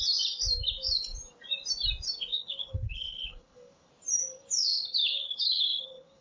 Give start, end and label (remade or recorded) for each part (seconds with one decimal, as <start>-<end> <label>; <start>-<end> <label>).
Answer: 0.0-2.3 recorded; 2.3-3.9 remade; 3.9-4.6 recorded; 4.6-6.2 remade